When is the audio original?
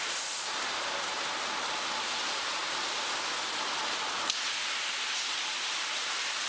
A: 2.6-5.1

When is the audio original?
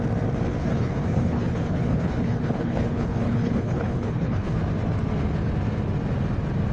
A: 0.0-0.6; 4.6-6.7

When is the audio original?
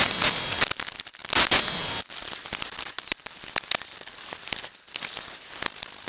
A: 0.0-6.1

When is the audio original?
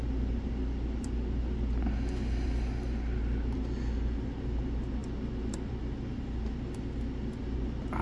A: 0.0-8.0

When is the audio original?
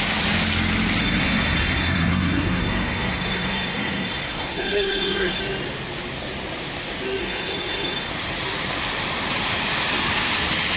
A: 0.0-1.0; 5.4-7.2; 8.1-10.8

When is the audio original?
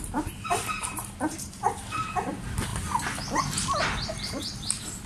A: 2.7-3.4